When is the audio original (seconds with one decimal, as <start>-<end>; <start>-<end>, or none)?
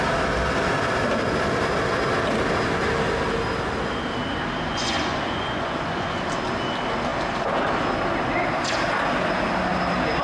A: 0.0-4.7; 6.2-10.2